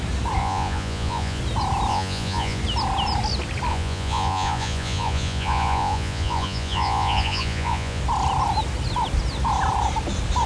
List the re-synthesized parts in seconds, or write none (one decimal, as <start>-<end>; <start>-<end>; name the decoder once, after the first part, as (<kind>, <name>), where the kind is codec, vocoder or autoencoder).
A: 0.4-1.4 (vocoder, Vocos); 1.9-2.6; 3.7-8.0